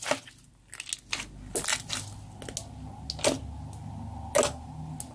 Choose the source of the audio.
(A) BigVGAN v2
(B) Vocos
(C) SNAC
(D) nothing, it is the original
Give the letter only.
D